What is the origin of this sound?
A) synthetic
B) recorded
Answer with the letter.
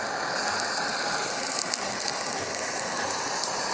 B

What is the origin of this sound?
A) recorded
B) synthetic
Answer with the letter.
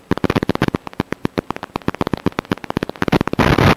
A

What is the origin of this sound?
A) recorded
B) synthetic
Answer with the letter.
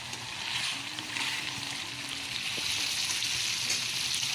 A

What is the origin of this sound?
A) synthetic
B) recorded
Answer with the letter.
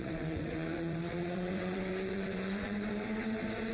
A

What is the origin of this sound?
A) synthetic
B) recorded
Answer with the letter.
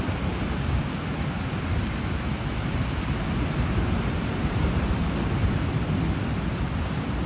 B